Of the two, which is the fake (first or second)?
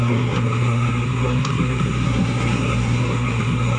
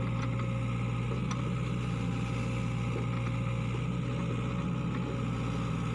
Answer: first